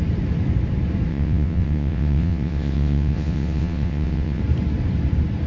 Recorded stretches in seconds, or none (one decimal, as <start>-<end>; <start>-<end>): 0.0-1.1; 4.4-5.5

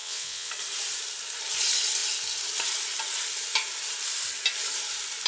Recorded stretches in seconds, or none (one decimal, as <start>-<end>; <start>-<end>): 0.5-5.3

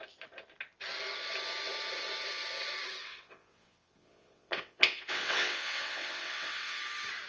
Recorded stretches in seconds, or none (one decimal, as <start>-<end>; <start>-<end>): 0.0-3.0; 6.8-7.3

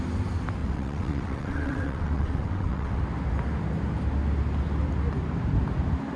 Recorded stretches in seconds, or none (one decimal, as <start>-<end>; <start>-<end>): 0.0-0.6; 3.0-6.2

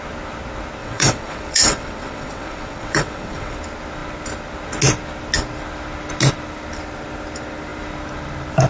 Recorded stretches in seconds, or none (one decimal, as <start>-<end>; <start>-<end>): 0.0-0.8; 3.6-8.7

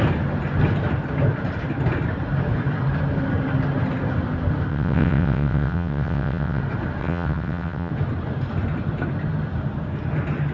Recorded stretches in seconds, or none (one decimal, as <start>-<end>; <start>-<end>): 0.0-4.7; 6.6-7.0; 7.9-10.5